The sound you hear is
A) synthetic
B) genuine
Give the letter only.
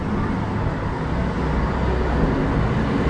B